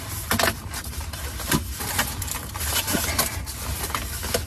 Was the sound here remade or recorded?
recorded